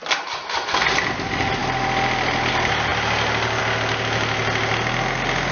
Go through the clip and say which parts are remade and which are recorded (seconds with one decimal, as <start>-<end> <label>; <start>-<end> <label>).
0.0-5.5 recorded